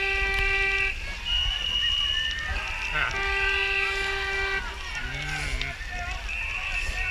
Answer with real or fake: real